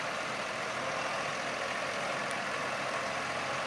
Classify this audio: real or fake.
real